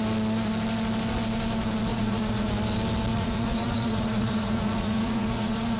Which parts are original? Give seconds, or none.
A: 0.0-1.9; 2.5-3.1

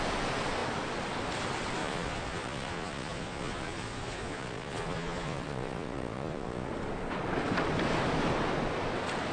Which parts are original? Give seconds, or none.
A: 0.0-1.8; 6.7-9.3

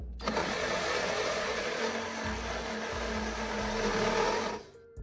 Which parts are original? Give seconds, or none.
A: 0.0-0.4; 1.8-5.0

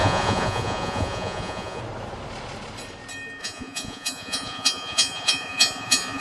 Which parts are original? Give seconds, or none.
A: 1.8-3.4